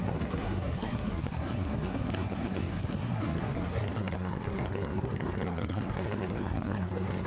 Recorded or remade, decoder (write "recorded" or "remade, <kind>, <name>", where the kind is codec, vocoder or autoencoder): remade, codec, SNAC